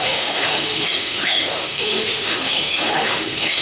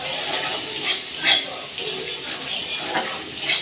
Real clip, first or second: second